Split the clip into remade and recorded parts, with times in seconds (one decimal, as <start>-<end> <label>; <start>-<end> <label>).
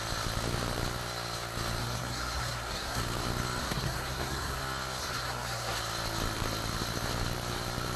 0.0-1.8 recorded; 1.8-3.0 remade; 3.0-3.6 recorded; 3.6-4.6 remade; 4.6-5.0 recorded; 5.0-5.8 remade; 5.8-8.0 recorded